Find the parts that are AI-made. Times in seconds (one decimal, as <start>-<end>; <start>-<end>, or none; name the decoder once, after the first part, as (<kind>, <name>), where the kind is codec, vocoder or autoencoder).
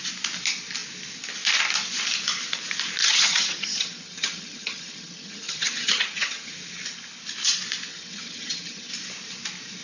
3.0-6.5 (vocoder, HiFi-GAN); 7.9-8.9